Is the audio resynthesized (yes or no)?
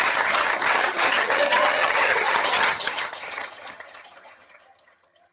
yes